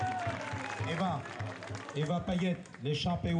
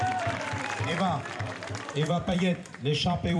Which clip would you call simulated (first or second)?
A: second